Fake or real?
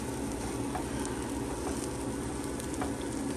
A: real